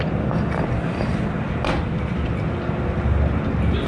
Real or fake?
real